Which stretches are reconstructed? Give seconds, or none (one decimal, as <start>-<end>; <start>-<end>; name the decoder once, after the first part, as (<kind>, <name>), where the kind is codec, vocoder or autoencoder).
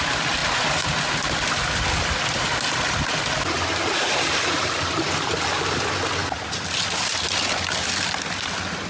none